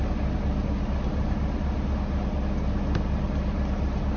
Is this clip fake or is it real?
real